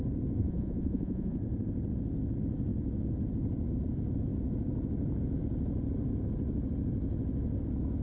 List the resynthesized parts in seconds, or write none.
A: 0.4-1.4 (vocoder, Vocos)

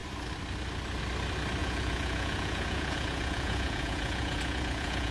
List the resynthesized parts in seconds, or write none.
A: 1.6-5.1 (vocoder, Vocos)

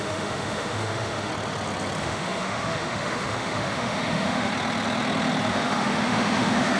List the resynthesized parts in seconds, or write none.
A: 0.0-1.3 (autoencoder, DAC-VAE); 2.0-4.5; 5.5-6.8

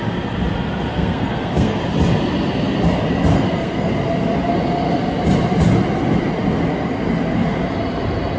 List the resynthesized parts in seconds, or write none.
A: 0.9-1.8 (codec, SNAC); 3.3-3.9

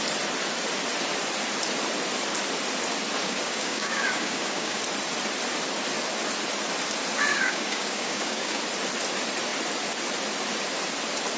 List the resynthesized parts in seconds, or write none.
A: 3.2-4.8 (codec, DAC); 7.3-8.6